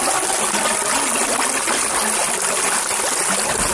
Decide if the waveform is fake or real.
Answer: real